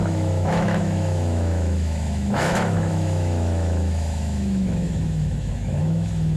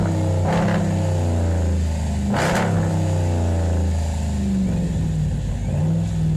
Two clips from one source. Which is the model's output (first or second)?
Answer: first